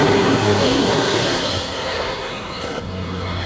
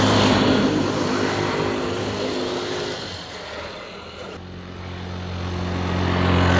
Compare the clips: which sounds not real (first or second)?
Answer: first